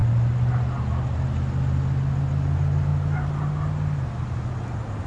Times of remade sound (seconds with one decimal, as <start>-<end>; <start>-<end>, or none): none